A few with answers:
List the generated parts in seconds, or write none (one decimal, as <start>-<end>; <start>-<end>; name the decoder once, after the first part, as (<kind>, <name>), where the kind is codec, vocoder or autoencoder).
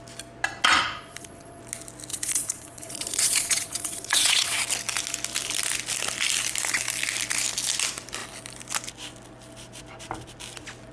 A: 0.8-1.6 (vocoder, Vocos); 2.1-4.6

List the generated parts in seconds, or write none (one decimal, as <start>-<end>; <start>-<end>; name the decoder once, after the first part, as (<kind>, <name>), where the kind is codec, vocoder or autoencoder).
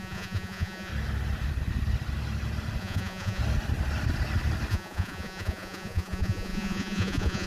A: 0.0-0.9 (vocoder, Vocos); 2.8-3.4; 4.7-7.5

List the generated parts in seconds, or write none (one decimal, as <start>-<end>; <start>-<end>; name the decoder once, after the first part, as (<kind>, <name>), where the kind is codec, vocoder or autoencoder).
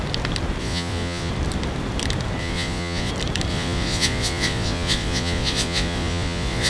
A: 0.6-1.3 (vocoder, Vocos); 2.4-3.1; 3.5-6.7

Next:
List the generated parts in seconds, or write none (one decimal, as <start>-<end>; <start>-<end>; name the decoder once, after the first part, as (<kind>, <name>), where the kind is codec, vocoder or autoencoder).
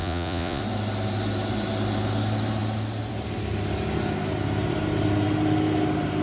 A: 0.0-0.6 (vocoder, Vocos)